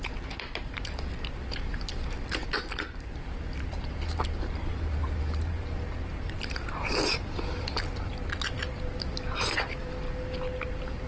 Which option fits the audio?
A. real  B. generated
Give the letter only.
A